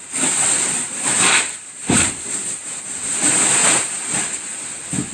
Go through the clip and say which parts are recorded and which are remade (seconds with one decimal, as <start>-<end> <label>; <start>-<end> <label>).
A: 0.0-0.8 recorded; 0.8-2.8 remade; 2.8-5.1 recorded